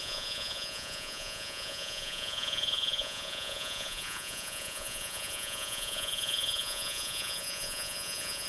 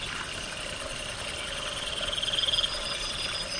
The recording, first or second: second